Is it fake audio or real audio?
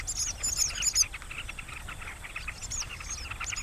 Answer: real